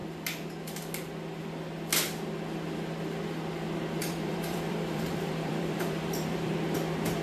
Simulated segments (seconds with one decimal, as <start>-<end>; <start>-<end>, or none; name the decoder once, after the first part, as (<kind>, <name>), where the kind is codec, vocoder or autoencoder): 4.0-6.5 (vocoder, BigVGAN v2)